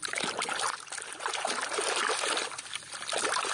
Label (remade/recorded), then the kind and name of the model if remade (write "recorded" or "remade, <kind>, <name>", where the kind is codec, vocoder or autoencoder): recorded